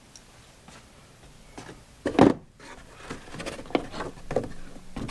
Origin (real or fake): real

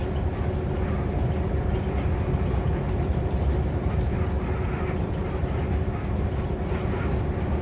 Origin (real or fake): real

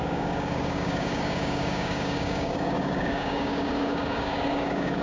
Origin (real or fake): fake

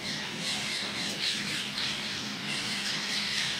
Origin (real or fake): fake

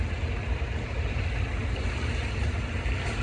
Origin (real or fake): real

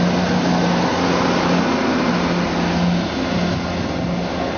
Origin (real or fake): real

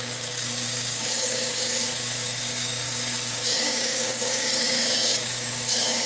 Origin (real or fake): fake